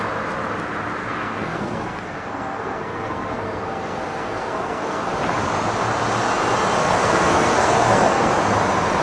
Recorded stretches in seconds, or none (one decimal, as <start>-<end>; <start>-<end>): 0.0-1.0; 5.1-6.8; 8.3-9.0

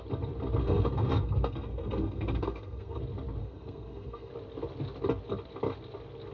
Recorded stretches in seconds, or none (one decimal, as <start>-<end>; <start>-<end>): 0.0-0.6; 3.0-3.4; 4.3-6.3

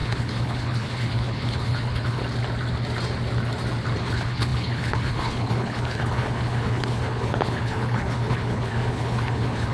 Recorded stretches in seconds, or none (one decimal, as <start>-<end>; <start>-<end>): 2.2-4.0